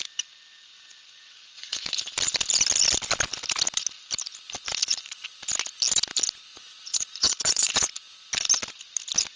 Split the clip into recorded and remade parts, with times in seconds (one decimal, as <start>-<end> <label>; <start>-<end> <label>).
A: 0.0-0.7 recorded; 0.7-1.9 remade; 1.9-4.8 recorded; 4.8-5.3 remade; 5.3-6.5 recorded; 6.5-7.9 remade; 7.9-9.4 recorded